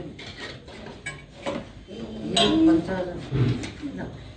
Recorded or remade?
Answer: recorded